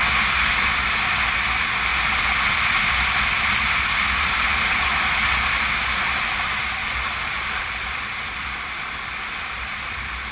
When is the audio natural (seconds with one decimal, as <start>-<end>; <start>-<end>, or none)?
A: 0.0-6.8